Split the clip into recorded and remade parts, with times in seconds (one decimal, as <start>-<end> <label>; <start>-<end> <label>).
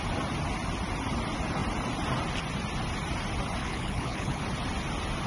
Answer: 0.0-3.6 recorded; 3.6-4.4 remade; 4.4-5.3 recorded